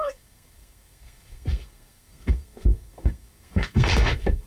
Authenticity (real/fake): fake